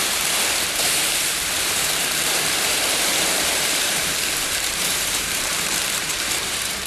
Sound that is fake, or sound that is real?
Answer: fake